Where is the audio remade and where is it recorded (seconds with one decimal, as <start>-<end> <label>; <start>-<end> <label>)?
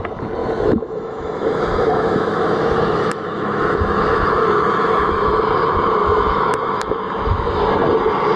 0.0-0.4 recorded; 0.4-5.4 remade; 5.4-6.0 recorded; 6.0-7.6 remade; 7.6-8.4 recorded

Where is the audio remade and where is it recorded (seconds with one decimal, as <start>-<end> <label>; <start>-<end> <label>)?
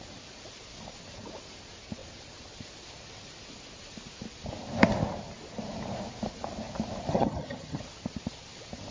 0.0-7.1 recorded; 7.1-7.8 remade; 7.8-8.9 recorded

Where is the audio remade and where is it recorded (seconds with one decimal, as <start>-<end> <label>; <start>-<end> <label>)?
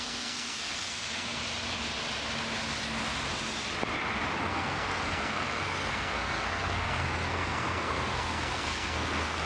0.0-1.4 remade; 1.4-4.4 recorded; 4.4-9.5 remade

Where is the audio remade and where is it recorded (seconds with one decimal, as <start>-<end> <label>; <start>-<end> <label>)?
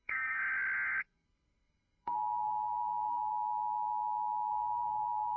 0.0-0.4 remade; 0.4-1.0 recorded; 1.0-3.3 remade; 3.3-4.5 recorded; 4.5-5.4 remade